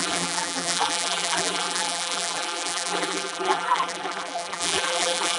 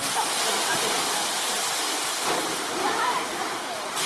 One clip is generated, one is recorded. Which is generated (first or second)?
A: first